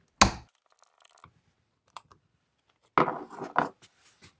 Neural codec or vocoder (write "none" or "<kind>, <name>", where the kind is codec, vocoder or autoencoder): none